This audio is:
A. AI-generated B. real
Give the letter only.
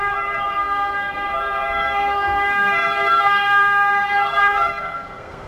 A